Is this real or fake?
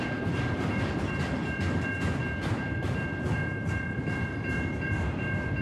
fake